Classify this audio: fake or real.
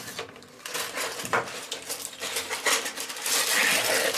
real